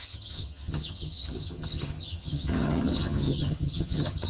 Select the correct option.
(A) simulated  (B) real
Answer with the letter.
A